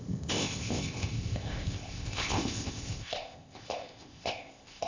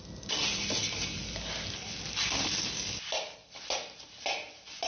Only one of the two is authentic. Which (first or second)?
second